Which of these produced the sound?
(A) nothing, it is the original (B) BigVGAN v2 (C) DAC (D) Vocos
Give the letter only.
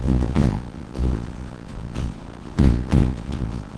D